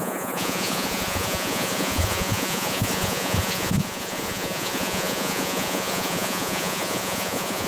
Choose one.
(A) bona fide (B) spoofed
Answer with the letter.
B